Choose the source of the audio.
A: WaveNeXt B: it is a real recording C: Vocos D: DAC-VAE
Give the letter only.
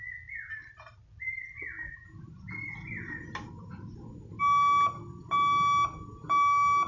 B